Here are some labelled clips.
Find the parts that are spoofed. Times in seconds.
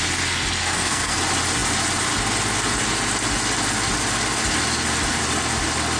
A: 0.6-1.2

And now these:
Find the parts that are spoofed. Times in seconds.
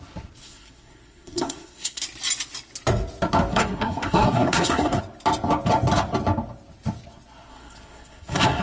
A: 0.4-2.0; 3.5-5.0; 7.5-8.6